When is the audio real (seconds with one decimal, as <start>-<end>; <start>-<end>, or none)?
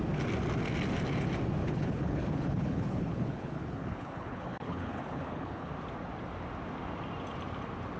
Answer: 0.0-1.6; 5.7-8.0